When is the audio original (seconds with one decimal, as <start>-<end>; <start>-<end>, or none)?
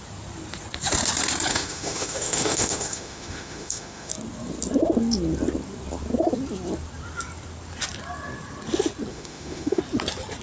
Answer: 0.0-1.5; 4.1-9.1; 9.8-10.4